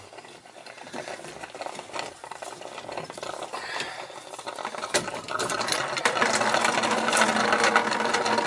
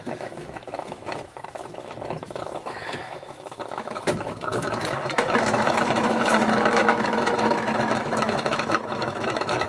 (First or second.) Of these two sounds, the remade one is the second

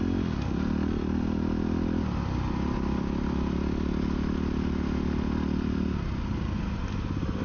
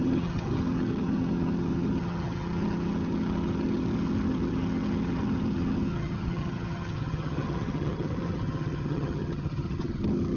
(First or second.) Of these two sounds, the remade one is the second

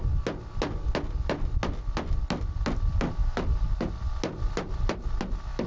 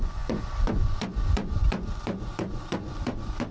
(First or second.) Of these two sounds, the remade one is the second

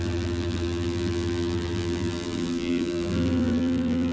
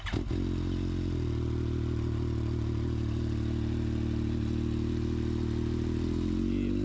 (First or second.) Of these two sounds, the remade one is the first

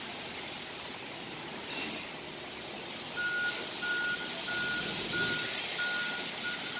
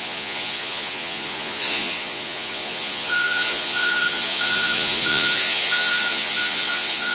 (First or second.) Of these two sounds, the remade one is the second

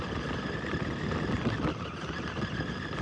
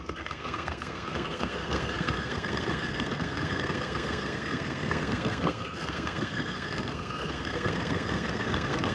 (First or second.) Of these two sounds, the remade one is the second